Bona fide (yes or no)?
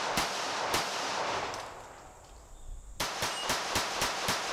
yes